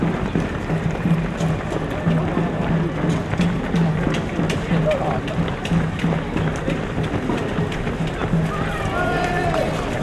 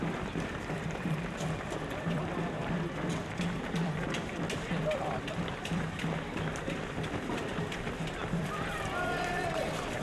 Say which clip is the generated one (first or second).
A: second